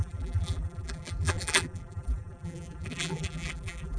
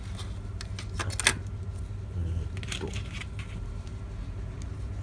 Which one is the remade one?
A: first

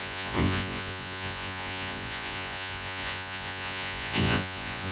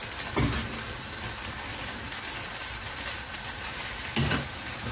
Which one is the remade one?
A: first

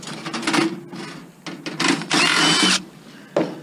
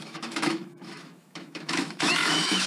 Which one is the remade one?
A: second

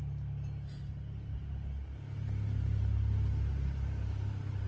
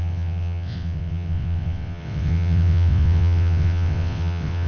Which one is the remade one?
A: second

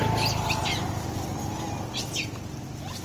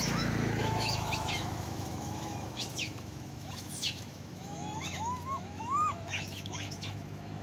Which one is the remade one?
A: second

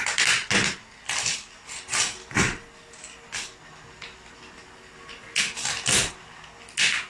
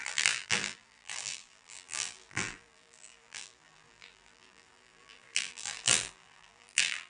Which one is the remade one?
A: second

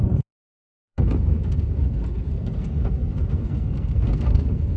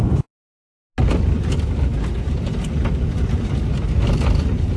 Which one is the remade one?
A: first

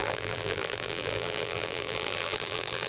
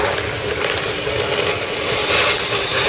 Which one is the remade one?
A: first